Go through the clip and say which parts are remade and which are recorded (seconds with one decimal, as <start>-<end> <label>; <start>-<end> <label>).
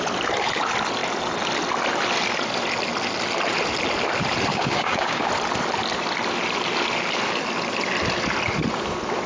0.0-4.5 recorded; 4.5-5.3 remade; 5.3-9.3 recorded